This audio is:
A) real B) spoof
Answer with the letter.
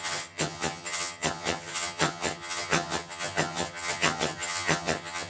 B